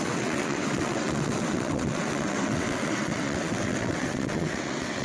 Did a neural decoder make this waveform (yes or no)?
yes